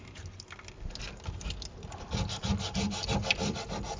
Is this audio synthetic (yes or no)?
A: no